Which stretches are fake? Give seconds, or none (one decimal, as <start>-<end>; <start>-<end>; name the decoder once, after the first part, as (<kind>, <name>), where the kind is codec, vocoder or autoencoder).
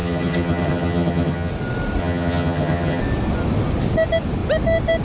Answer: 0.0-1.5 (vocoder, HiFi-GAN); 2.0-3.0